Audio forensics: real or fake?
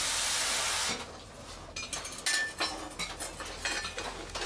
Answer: real